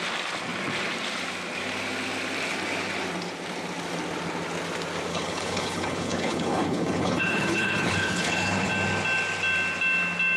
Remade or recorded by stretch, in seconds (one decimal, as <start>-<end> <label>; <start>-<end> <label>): 0.0-5.1 recorded; 5.1-8.7 remade; 8.7-10.4 recorded